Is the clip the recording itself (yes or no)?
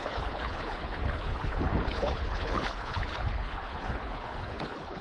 no